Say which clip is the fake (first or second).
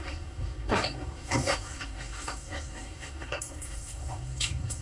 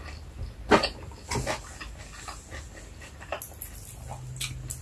first